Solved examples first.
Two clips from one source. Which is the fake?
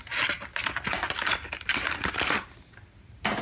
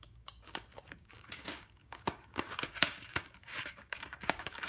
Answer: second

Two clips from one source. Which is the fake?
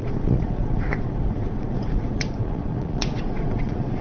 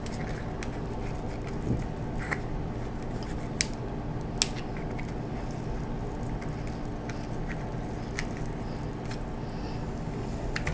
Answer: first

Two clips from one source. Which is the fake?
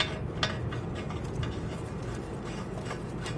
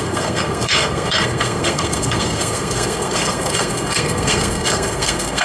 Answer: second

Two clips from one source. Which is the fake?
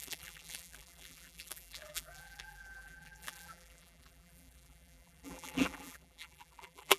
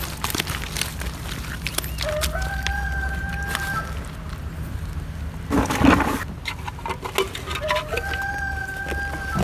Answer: first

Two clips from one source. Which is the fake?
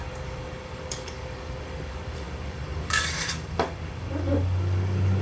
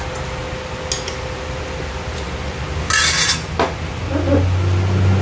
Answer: first